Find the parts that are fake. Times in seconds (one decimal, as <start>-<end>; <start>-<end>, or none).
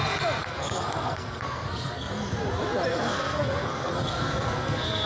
0.4-2.1; 2.9-5.1